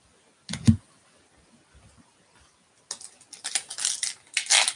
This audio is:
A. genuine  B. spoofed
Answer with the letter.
A